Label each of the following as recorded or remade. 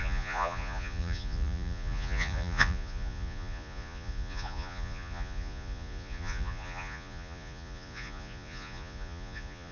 remade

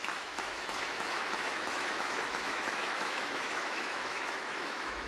remade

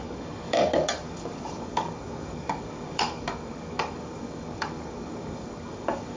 remade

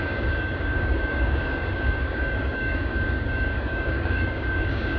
remade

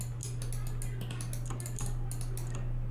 recorded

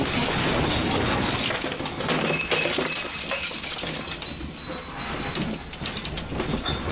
recorded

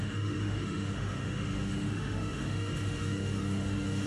remade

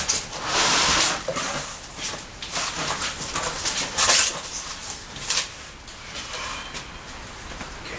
recorded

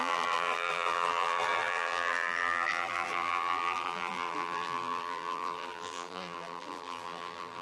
remade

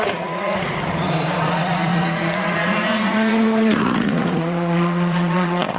remade